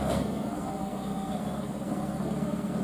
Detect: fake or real fake